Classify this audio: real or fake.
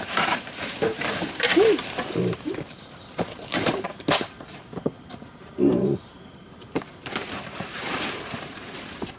fake